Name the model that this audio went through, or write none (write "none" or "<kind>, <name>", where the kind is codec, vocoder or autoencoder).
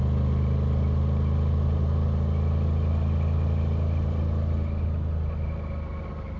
none